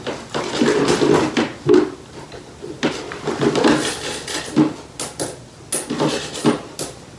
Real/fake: real